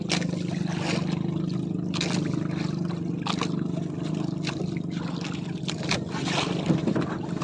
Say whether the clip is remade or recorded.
recorded